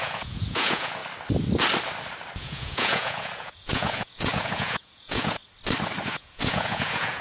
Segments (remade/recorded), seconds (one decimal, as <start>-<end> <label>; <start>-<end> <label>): 0.0-1.0 remade; 1.0-2.4 recorded; 2.4-5.4 remade; 5.4-6.1 recorded; 6.1-7.2 remade